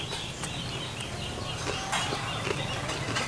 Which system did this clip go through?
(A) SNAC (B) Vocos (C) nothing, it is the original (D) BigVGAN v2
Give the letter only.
C